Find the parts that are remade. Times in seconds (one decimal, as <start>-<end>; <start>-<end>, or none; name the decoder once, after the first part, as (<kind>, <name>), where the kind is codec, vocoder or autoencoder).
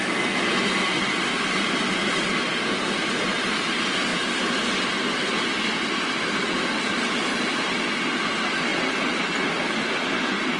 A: none